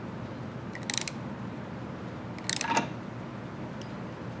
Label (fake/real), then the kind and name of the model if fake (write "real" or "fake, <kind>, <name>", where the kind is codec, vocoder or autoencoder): real